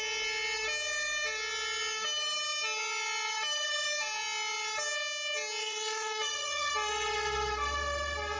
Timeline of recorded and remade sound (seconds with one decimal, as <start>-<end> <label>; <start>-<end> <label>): 0.0-5.6 recorded; 5.6-6.7 remade; 6.7-8.4 recorded